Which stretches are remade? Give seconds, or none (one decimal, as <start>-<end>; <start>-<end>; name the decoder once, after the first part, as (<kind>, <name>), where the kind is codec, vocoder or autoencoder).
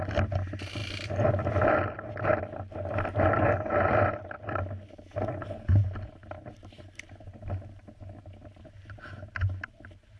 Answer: none